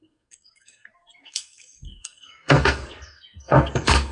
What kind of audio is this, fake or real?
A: fake